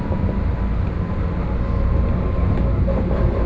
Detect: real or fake real